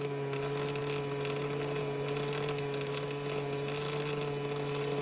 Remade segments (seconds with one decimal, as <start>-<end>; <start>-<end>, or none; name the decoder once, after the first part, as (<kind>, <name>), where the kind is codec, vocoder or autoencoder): none